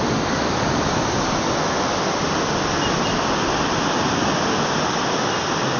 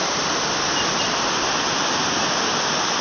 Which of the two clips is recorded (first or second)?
first